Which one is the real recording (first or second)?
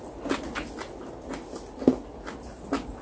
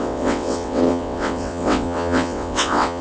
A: first